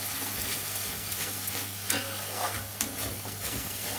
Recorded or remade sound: remade